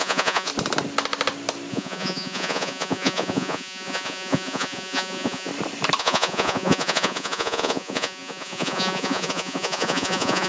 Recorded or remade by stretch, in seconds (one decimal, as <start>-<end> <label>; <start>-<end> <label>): 0.0-0.5 remade; 0.5-1.7 recorded; 1.7-5.5 remade; 5.5-6.0 recorded; 6.0-10.5 remade